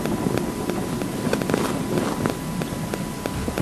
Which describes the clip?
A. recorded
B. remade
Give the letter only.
A